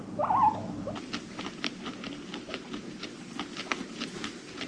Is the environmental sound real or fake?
real